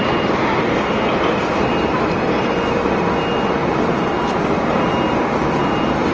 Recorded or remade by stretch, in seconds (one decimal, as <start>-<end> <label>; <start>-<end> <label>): 0.0-6.1 recorded